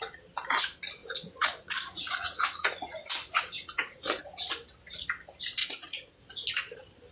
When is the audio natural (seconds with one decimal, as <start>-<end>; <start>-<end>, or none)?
0.0-1.0; 4.2-5.6; 6.2-7.1